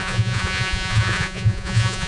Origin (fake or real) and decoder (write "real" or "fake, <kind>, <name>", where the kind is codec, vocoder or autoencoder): fake, vocoder, Vocos